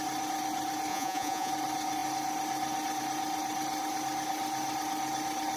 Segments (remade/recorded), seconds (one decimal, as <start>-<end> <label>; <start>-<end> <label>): 0.0-0.9 recorded; 0.9-1.5 remade; 1.5-5.6 recorded